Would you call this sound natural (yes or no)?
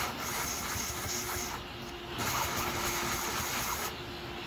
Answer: yes